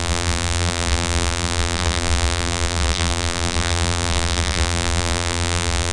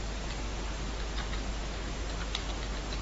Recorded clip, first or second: second